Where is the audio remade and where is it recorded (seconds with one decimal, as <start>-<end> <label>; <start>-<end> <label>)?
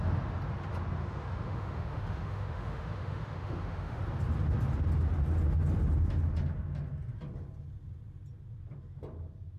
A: 0.0-1.0 recorded; 1.0-4.0 remade; 4.0-9.6 recorded